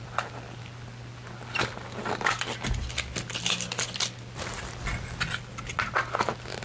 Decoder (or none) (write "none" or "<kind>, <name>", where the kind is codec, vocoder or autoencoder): none